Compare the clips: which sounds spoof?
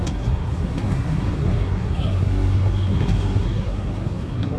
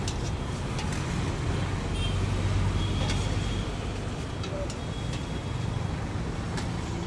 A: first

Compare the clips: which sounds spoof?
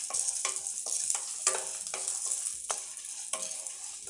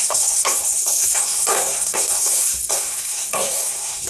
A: second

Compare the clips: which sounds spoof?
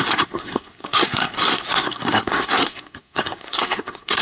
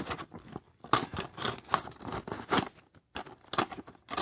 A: first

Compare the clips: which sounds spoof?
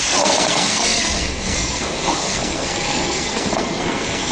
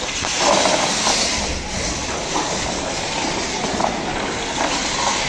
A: first